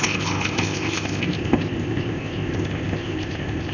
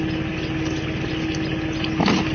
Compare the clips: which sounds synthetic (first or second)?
first